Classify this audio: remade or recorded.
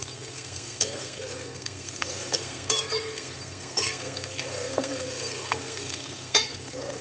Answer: remade